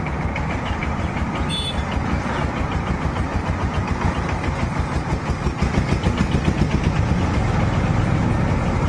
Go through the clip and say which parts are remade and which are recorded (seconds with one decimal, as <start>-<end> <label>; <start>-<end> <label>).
0.0-8.9 recorded